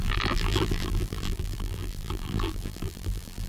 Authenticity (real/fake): fake